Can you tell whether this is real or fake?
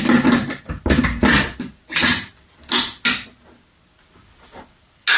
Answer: real